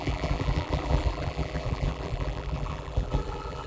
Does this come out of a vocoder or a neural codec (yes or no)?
yes